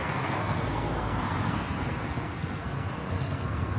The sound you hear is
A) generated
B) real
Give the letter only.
A